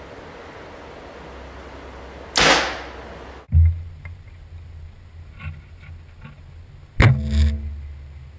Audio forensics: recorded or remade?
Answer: recorded